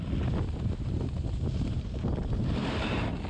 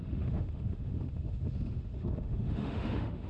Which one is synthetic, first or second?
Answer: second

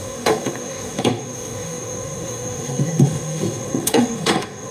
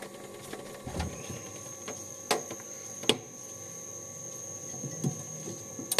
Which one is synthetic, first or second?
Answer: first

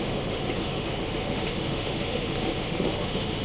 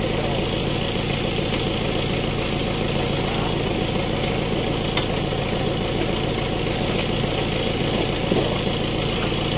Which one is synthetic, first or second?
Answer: first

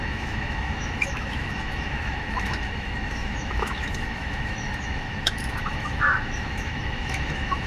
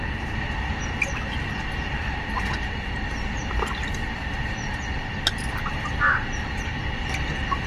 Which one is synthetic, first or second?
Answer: first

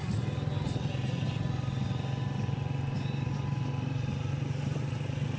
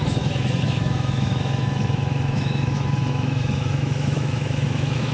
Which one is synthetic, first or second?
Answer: second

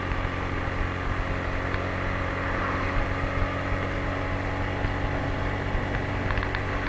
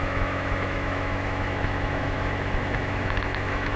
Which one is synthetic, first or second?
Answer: second